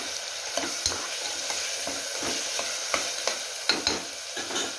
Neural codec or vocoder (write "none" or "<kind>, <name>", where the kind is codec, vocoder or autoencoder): none